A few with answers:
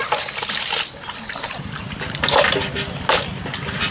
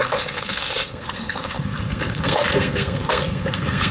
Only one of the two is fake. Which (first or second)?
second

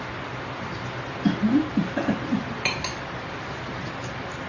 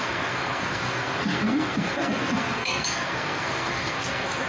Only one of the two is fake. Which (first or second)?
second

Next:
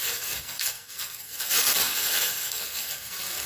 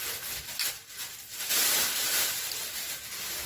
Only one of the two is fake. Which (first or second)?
first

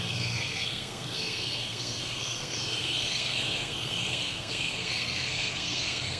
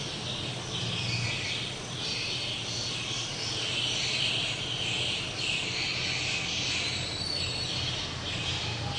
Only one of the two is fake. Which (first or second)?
first